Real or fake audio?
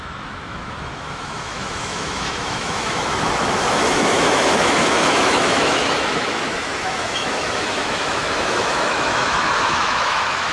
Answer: fake